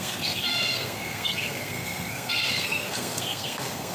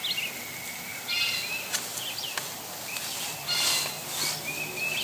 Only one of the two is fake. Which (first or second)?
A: first